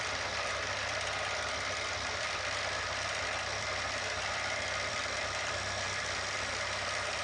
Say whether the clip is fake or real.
fake